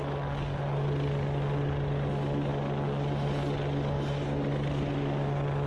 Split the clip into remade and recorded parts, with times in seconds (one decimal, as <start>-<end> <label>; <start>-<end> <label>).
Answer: 0.0-5.7 recorded

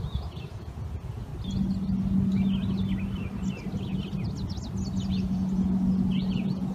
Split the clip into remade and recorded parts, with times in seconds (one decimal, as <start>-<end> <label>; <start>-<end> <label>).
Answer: 0.0-1.3 remade; 1.3-5.1 recorded; 5.1-6.7 remade

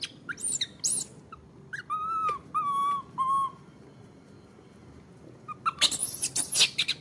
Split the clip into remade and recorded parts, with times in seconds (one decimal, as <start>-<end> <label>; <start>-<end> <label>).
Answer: 0.0-6.0 recorded; 6.0-6.5 remade; 6.5-7.0 recorded

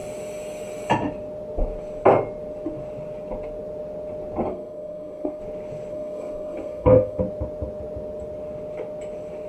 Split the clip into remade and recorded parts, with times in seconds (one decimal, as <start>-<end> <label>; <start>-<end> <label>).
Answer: 0.0-4.5 recorded; 4.5-5.4 remade; 5.4-5.9 recorded; 5.9-7.2 remade; 7.2-9.5 recorded

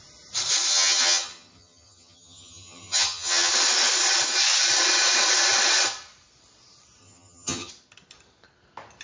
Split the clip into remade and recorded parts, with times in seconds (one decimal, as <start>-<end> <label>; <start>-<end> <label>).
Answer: 0.0-0.7 recorded; 0.7-3.5 remade; 3.5-7.0 recorded; 7.0-7.7 remade; 7.7-9.0 recorded

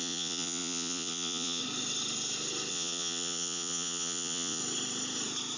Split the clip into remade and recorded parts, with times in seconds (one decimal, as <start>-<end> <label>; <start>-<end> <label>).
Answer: 0.0-1.6 remade; 1.6-2.7 recorded; 2.7-4.6 remade; 4.6-5.6 recorded